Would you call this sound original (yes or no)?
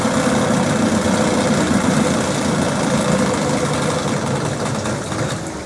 yes